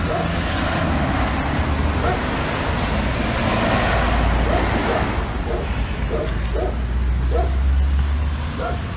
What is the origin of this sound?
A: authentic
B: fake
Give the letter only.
A